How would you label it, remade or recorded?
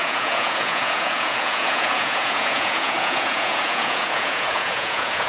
remade